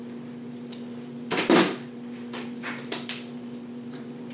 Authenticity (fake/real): fake